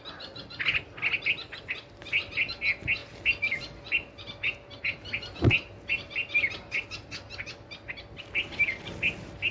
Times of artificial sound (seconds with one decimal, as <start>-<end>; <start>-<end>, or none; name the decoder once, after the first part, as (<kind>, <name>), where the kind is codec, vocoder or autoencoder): none